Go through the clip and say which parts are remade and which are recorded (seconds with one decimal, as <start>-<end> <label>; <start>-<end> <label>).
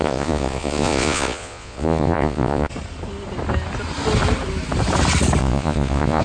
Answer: 0.0-2.7 remade; 2.7-5.4 recorded; 5.4-6.2 remade